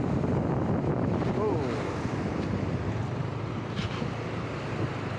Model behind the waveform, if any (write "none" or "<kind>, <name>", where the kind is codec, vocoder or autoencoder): none